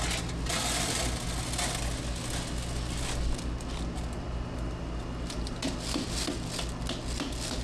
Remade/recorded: recorded